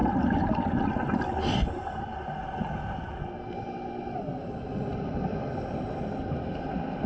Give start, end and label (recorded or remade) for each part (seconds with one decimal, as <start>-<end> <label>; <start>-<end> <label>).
0.0-7.1 recorded